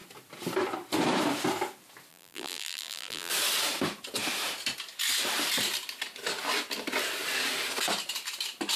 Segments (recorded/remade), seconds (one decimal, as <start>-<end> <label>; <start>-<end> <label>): 0.0-2.1 recorded; 2.1-3.3 remade; 3.3-8.8 recorded